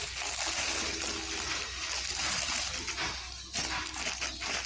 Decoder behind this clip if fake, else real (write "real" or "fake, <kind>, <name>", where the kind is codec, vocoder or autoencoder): real